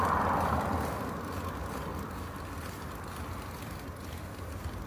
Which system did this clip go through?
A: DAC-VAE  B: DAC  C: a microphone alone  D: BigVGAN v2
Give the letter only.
C